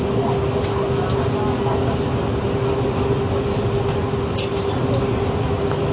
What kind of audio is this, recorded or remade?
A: recorded